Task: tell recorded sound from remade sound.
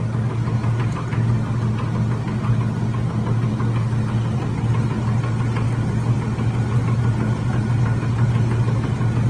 recorded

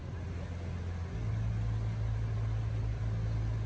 recorded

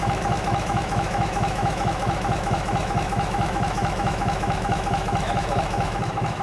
remade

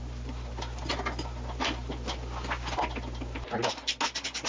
recorded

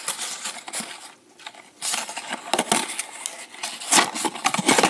recorded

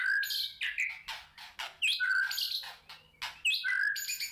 recorded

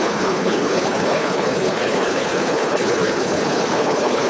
remade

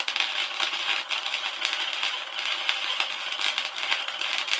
recorded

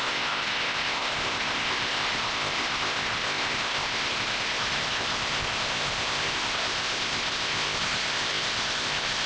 remade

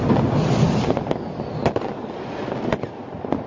recorded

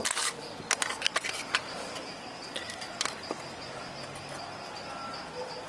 recorded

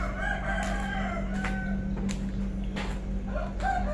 recorded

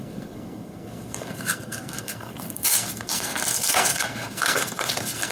remade